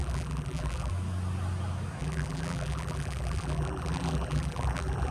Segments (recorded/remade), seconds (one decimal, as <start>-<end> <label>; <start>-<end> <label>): 0.0-0.9 remade; 0.9-2.0 recorded; 2.0-5.1 remade